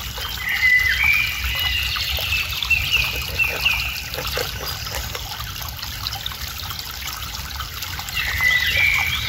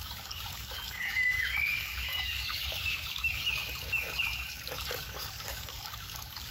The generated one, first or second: second